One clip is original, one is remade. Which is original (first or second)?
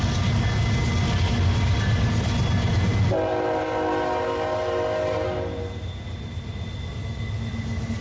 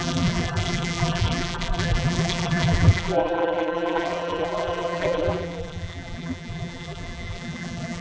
first